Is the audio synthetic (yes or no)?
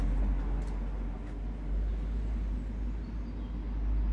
no